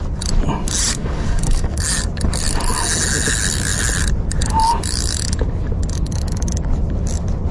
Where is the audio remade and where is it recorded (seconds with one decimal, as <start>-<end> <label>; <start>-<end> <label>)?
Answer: 0.0-0.9 recorded; 0.9-1.8 remade; 1.8-7.5 recorded